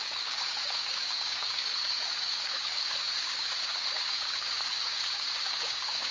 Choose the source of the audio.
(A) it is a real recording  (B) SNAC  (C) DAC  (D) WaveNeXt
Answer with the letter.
C